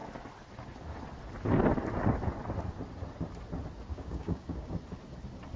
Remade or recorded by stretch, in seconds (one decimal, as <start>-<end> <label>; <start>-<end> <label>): 0.0-3.9 recorded; 3.9-4.8 remade; 4.8-5.6 recorded